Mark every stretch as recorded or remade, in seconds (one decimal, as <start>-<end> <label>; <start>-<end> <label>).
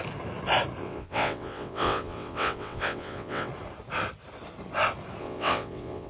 0.0-0.8 recorded; 0.8-3.5 remade; 3.5-5.2 recorded; 5.2-6.1 remade